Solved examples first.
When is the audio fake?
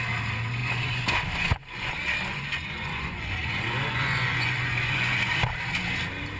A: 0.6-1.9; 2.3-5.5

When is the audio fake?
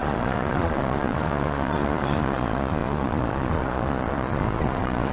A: 0.0-5.1